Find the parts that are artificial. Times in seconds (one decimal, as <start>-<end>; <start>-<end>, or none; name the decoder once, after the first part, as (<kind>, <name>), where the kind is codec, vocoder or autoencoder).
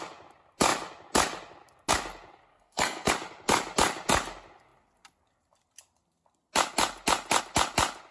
2.5-3.1 (codec, SNAC)